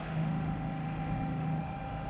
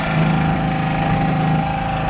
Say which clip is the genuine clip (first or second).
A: second